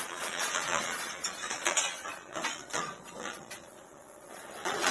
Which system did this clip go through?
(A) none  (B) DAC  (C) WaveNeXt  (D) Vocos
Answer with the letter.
D